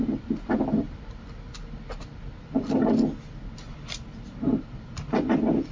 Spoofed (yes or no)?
no